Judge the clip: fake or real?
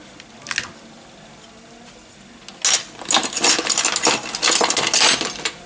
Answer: real